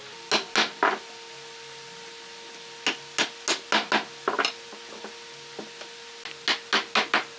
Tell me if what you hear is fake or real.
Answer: real